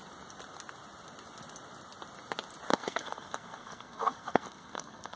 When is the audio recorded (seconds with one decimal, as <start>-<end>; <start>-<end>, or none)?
0.0-2.7